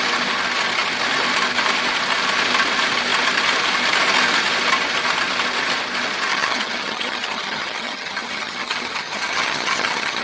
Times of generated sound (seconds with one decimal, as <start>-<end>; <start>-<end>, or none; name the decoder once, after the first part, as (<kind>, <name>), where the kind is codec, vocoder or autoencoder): 6.3-10.2 (vocoder, HiFi-GAN)